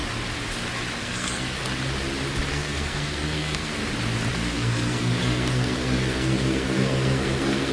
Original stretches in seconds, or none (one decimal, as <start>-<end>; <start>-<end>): 0.0-1.0; 1.6-2.5; 3.8-4.3